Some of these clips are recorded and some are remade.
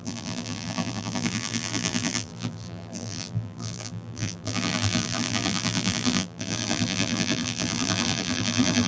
remade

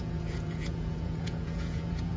remade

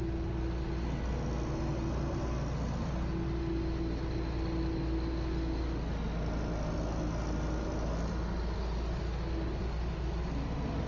recorded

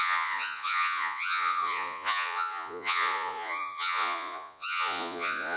remade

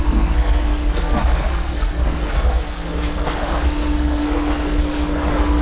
remade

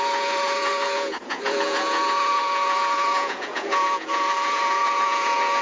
remade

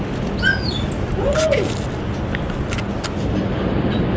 recorded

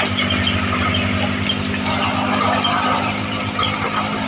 recorded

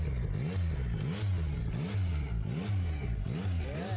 recorded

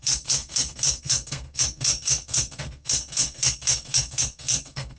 remade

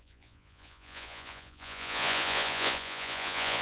remade